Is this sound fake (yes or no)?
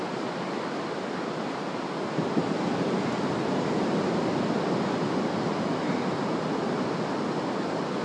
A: no